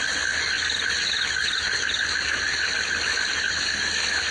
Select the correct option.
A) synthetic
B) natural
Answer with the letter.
B